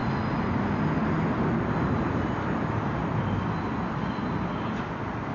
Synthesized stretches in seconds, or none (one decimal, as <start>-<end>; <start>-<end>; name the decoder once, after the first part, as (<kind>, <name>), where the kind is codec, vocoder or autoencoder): none